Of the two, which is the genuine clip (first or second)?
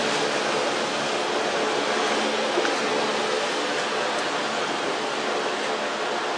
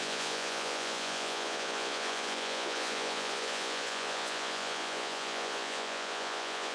first